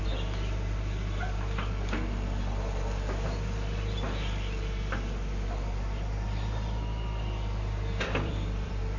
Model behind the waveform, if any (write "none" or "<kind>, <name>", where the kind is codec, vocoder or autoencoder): vocoder, BigVGAN v2